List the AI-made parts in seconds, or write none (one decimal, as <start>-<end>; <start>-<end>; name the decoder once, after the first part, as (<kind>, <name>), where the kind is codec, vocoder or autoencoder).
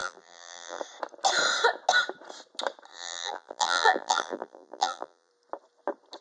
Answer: 0.0-0.8 (vocoder, BigVGAN v2); 2.9-5.3